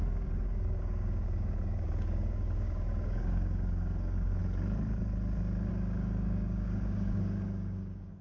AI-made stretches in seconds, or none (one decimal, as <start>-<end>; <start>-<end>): 0.0-4.4; 5.7-8.2